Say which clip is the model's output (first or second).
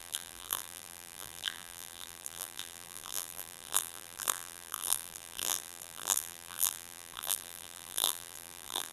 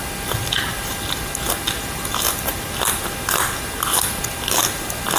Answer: first